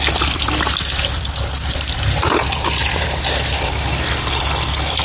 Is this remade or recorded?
remade